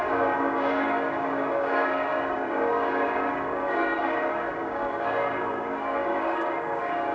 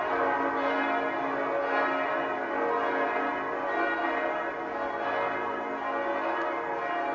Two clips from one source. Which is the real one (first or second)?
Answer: second